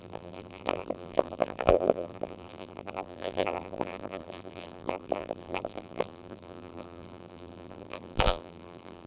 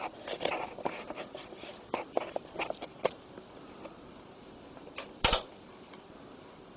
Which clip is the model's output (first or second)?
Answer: first